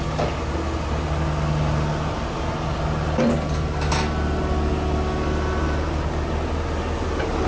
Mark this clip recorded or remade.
recorded